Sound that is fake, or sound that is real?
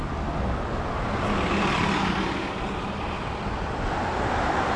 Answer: real